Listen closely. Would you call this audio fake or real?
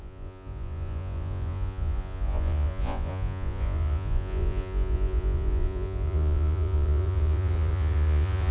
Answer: fake